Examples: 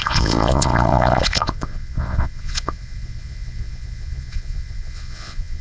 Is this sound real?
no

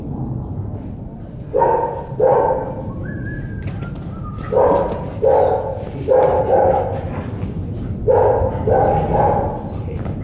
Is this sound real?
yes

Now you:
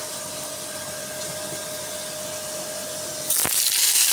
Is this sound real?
yes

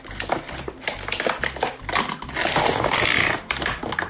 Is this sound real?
yes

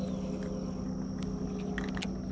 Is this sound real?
yes